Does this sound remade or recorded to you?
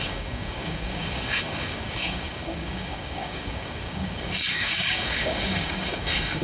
remade